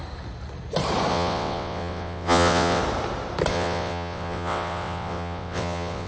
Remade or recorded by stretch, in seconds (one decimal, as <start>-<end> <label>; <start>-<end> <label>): 0.0-1.1 recorded; 1.1-2.8 remade; 2.8-3.5 recorded; 3.5-6.1 remade